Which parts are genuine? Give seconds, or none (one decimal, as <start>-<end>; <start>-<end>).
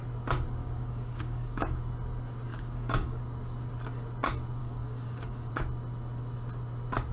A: 0.0-0.6; 1.9-2.5; 3.2-4.6; 5.5-7.1